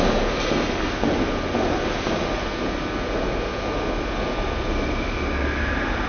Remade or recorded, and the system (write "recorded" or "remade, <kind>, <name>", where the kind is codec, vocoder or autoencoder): recorded